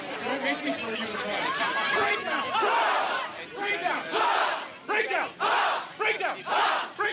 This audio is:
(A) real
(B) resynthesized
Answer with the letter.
A